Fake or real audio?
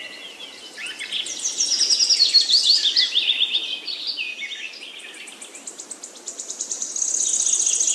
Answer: real